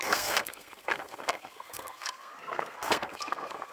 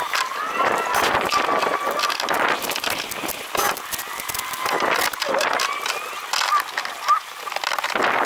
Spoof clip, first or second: first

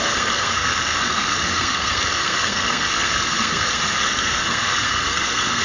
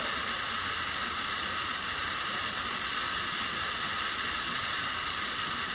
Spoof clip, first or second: first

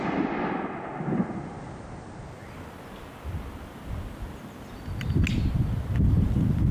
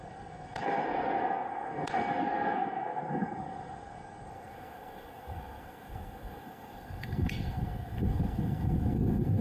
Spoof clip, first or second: second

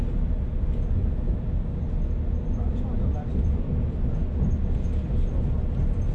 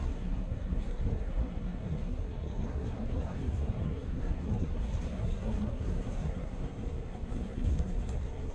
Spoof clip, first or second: second